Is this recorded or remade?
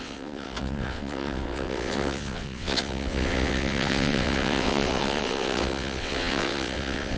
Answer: remade